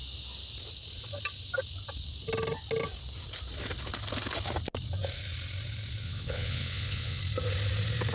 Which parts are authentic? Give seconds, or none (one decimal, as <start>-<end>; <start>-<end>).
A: 0.0-6.0; 7.2-8.1